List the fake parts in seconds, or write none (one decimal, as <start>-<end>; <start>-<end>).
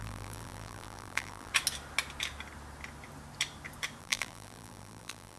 0.0-1.5; 4.0-5.4